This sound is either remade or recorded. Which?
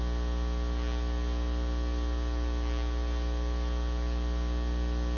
recorded